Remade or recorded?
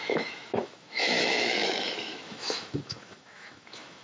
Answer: remade